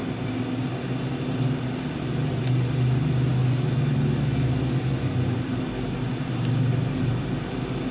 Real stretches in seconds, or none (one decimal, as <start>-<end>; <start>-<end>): 0.0-7.9